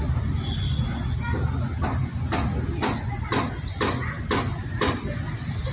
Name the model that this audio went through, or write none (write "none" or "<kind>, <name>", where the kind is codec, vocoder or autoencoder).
none